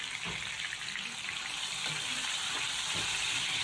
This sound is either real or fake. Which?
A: real